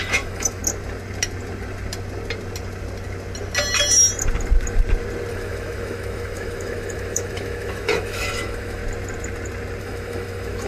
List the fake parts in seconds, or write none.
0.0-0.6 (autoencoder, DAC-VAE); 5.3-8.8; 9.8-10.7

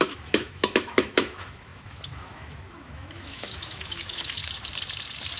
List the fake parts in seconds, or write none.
0.0-4.4 (autoencoder, DAC-VAE)

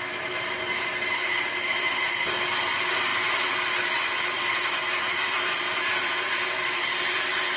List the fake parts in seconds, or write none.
none